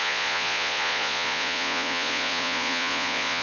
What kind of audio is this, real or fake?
fake